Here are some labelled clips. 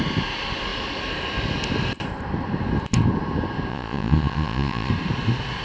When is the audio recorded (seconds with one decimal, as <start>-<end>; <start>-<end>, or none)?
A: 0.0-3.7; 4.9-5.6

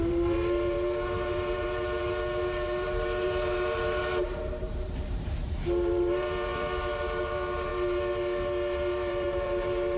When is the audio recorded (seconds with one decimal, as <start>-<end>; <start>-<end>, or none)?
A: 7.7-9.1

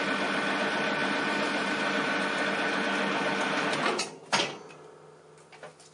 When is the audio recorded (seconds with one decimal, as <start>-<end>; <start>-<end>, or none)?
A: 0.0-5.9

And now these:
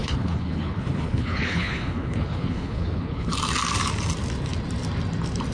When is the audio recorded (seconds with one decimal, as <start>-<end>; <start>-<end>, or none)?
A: 3.3-5.5